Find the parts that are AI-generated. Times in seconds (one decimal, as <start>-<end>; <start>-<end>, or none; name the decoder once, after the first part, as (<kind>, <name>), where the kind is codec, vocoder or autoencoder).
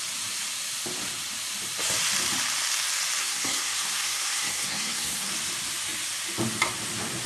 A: 3.2-5.3 (codec, SNAC)